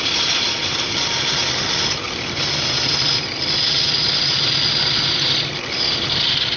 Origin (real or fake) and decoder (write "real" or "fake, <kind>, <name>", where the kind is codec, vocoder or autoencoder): real